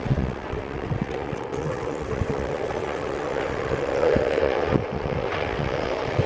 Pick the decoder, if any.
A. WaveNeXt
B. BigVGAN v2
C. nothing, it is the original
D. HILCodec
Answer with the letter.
A